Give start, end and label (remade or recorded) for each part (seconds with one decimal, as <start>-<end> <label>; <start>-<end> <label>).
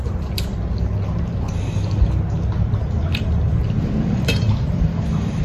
0.0-0.5 remade; 0.5-3.0 recorded; 3.0-3.6 remade; 3.6-4.1 recorded; 4.1-5.4 remade